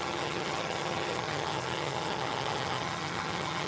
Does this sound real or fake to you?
fake